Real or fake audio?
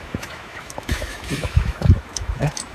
fake